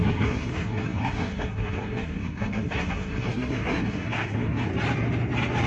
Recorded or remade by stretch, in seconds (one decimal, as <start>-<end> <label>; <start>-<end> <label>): 0.0-4.7 remade; 4.7-5.7 recorded